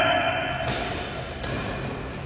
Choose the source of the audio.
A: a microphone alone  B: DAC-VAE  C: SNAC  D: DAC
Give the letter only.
A